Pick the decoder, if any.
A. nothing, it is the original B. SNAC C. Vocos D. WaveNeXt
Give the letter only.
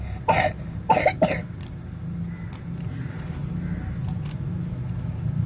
A